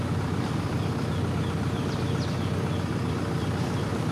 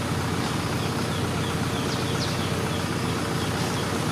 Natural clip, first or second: second